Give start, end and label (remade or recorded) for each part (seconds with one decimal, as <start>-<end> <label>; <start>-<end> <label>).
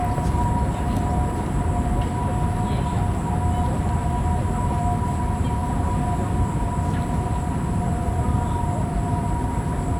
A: 0.0-10.0 recorded